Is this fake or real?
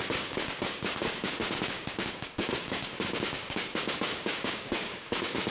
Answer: fake